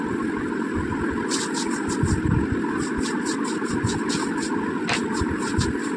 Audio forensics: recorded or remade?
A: recorded